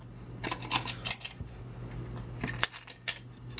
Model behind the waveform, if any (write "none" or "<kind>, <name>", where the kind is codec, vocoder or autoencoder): none